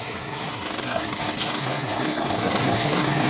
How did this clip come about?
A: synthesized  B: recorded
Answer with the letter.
A